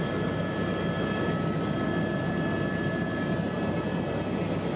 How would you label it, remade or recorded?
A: recorded